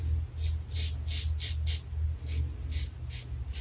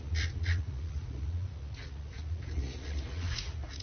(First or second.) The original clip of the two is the first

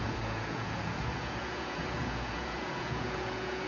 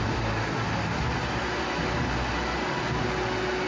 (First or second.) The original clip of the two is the second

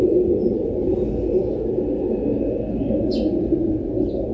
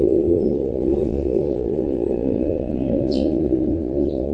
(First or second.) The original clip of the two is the first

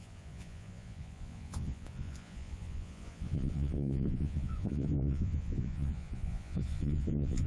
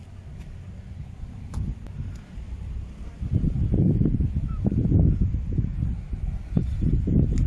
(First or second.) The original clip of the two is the second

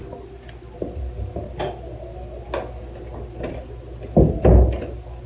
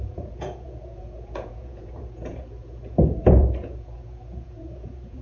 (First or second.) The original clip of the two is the first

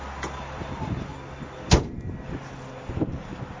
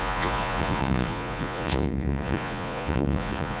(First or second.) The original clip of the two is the first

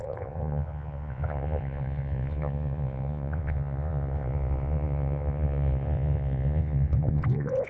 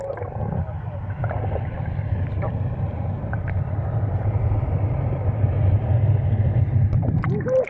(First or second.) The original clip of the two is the second